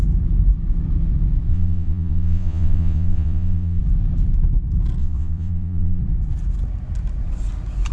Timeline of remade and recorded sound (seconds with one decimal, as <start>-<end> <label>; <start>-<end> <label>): 0.0-1.5 recorded; 1.5-3.8 remade; 3.8-5.0 recorded; 5.0-6.0 remade; 6.0-7.9 recorded